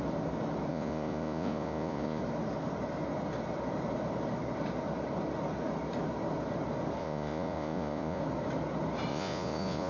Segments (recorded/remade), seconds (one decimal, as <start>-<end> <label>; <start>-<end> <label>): 0.0-0.7 recorded; 0.7-2.2 remade; 2.2-7.0 recorded; 7.0-8.2 remade; 8.2-9.1 recorded; 9.1-9.9 remade